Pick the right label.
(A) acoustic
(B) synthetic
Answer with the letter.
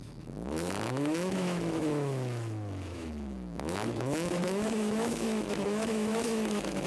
B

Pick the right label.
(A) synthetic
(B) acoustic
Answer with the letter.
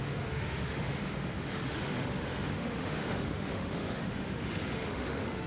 A